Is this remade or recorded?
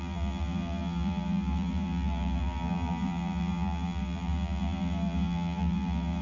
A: remade